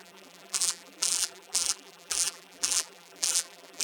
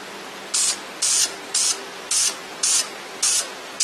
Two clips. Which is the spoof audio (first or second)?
first